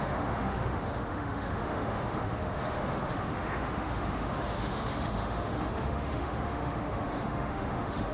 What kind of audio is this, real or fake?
fake